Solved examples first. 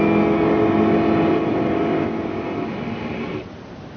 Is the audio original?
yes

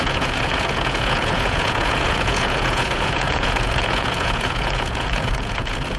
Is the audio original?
no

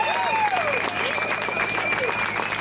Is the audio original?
yes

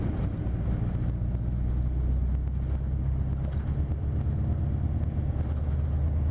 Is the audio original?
yes